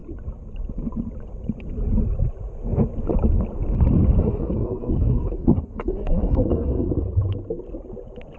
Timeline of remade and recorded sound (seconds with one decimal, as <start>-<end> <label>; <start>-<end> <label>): 0.0-4.2 recorded; 4.2-6.9 remade; 6.9-8.4 recorded